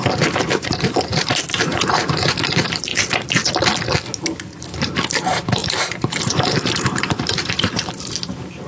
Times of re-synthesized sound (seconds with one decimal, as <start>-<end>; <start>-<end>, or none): 0.0-2.9; 4.6-8.7